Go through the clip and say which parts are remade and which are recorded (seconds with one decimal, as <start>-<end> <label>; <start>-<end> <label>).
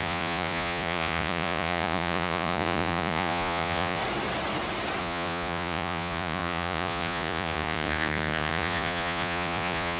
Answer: 0.0-4.0 remade; 4.0-5.0 recorded; 5.0-10.0 remade